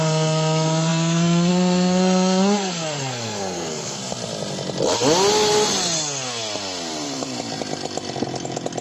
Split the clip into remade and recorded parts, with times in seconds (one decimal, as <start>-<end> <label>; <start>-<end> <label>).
0.0-4.0 remade; 4.0-8.8 recorded